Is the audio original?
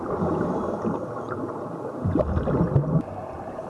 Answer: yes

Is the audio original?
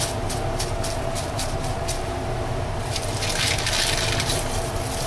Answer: no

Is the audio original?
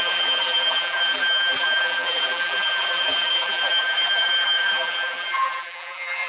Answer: no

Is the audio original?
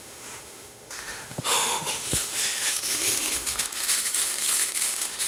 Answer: no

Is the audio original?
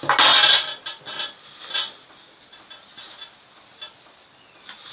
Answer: yes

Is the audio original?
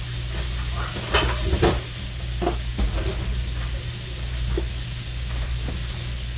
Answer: yes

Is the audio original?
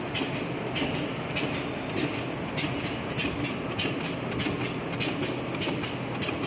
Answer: yes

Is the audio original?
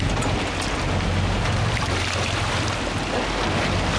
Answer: yes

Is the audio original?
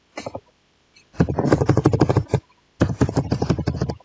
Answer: yes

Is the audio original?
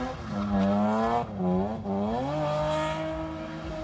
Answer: yes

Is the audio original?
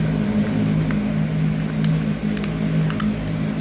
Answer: yes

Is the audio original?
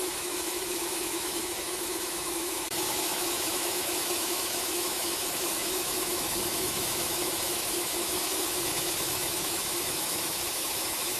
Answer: no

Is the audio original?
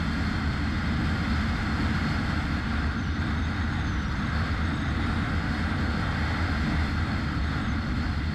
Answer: yes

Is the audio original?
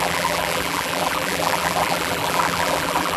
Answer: no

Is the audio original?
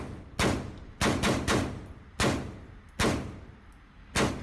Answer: yes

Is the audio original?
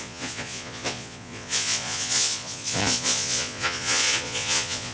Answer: no